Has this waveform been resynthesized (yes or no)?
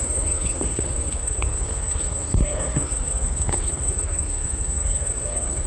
yes